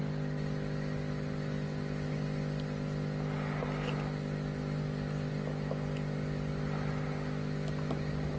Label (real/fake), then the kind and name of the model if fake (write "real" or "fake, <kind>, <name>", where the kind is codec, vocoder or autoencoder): real